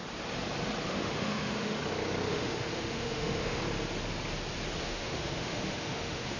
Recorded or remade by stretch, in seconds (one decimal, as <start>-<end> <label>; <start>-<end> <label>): 0.0-0.9 recorded; 0.9-1.8 remade; 1.8-2.3 recorded; 2.3-3.6 remade; 3.6-4.8 recorded; 4.8-6.4 remade